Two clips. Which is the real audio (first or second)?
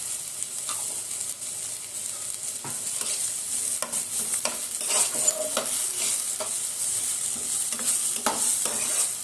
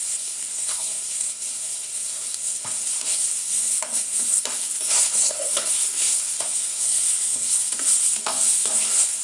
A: first